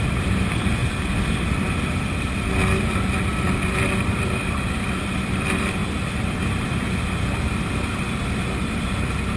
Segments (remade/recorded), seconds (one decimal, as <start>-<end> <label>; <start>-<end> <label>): 0.0-0.8 remade; 0.8-1.3 recorded; 1.3-9.4 remade